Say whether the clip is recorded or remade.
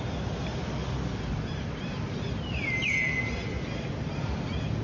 recorded